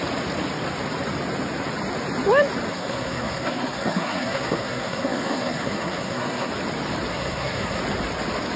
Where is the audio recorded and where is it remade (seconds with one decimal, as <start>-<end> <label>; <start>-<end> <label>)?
0.0-2.7 recorded; 2.7-6.5 remade; 6.5-7.1 recorded; 7.1-7.8 remade; 7.8-8.6 recorded